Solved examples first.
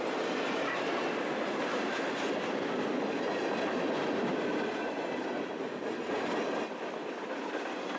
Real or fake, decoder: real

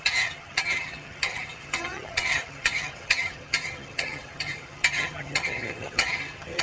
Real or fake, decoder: fake, vocoder, HiFi-GAN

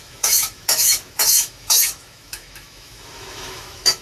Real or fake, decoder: fake, autoencoder, DAC-VAE